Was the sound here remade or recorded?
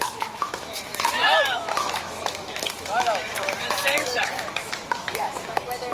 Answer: remade